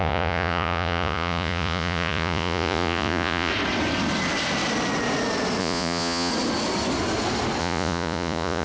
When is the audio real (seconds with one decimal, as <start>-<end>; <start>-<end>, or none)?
3.5-5.6; 6.3-7.6

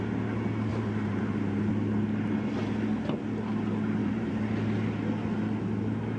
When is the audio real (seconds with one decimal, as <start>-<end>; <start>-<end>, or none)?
0.0-0.7; 1.7-4.0; 4.5-6.2